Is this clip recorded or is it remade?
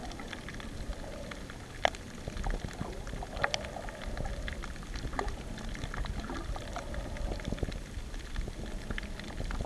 recorded